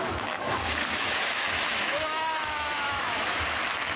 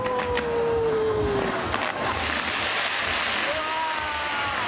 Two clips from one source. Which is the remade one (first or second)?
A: first